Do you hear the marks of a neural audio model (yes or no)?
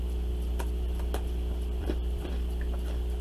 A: yes